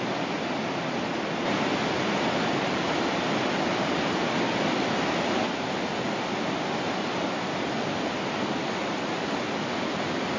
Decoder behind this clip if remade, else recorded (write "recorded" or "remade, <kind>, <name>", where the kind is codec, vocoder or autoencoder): recorded